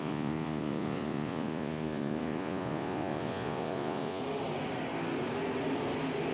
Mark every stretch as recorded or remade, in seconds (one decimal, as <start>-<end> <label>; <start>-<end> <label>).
0.0-4.2 remade; 4.2-6.3 recorded